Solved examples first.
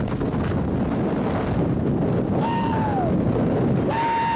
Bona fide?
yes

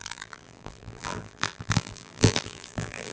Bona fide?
no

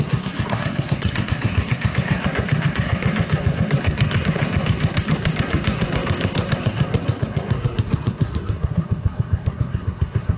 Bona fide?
no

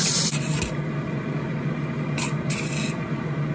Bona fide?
yes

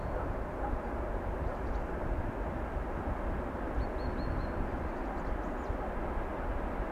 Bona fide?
yes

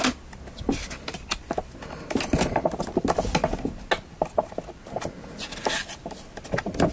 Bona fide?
yes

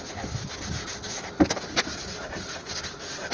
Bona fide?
yes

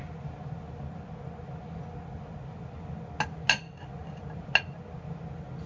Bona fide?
yes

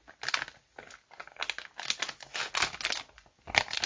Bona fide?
yes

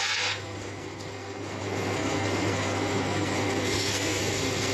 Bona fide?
no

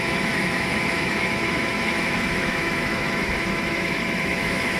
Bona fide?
no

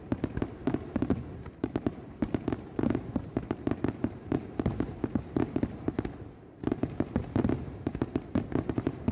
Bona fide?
no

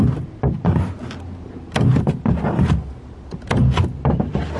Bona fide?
yes